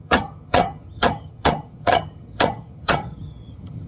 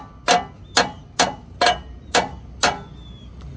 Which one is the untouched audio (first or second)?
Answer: second